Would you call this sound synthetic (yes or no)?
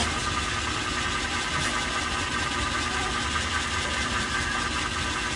no